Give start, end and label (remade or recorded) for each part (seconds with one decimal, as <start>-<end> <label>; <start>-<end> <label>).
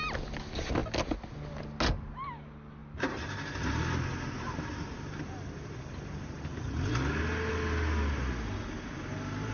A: 0.0-9.5 recorded